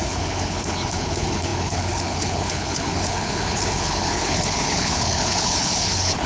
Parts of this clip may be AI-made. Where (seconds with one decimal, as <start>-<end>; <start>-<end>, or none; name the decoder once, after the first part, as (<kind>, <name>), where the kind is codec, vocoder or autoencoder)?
0.0-6.3 (codec, HILCodec)